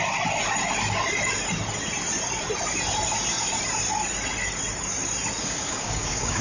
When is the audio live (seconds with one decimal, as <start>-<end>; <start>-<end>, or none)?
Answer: 0.0-5.4